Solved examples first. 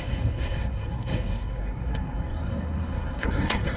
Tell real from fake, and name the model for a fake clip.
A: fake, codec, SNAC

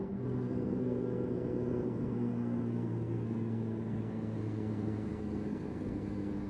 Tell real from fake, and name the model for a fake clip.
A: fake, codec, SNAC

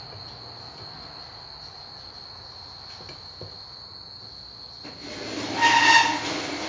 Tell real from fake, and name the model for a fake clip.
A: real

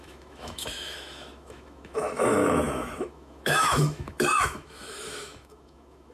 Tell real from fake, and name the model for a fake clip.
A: fake, autoencoder, DAC-VAE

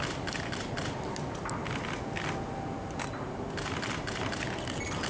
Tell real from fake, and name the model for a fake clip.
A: real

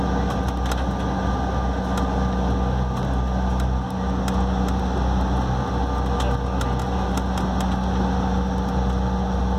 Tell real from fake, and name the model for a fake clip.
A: real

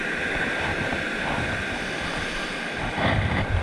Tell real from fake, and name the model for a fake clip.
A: real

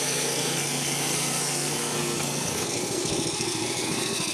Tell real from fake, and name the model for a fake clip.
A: fake, codec, SNAC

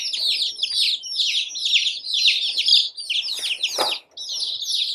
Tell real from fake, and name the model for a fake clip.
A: real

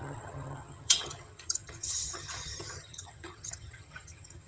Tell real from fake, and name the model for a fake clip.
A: fake, vocoder, HiFi-GAN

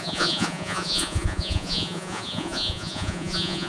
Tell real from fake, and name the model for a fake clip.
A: fake, vocoder, Vocos